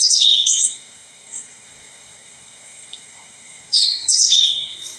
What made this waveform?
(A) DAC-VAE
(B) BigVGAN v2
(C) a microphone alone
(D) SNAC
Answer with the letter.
D